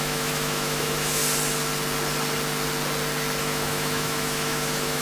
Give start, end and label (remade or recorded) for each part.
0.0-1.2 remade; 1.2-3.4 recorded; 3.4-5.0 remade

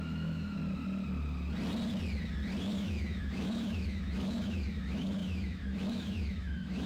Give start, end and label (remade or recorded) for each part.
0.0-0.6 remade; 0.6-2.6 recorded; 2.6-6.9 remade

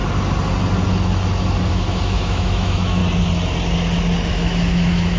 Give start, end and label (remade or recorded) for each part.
0.0-1.7 recorded; 1.7-3.0 remade; 3.0-4.3 recorded; 4.3-5.2 remade

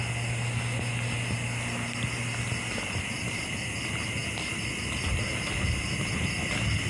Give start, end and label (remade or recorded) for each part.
0.0-6.9 recorded